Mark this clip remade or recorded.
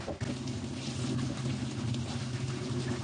recorded